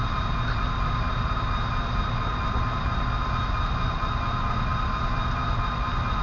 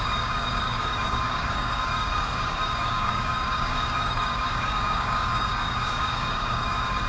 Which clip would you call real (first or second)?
first